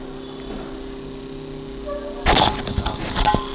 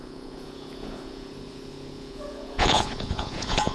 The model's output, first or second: second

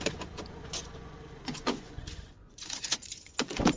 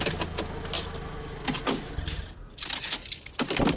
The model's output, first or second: first